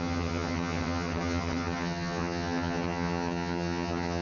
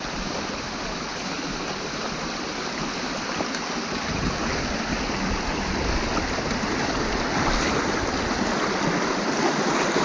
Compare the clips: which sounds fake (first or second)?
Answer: first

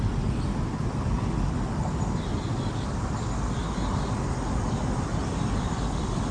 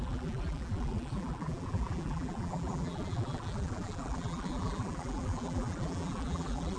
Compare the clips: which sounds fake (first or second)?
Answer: second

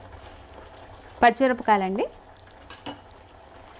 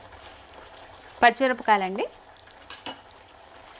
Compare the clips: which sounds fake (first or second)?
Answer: second